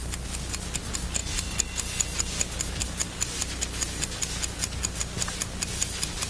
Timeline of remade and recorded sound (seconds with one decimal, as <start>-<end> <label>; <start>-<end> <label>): 0.0-6.3 recorded